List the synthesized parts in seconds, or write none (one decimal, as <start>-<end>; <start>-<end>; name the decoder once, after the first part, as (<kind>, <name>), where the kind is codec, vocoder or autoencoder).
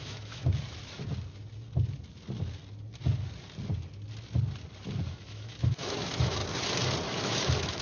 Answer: 0.0-0.5 (autoencoder, DAC-VAE); 5.1-6.4; 7.2-7.8